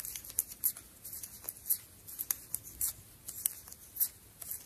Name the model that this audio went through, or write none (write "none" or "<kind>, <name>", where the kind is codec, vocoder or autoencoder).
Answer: none